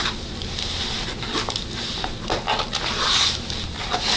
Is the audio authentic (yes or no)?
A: yes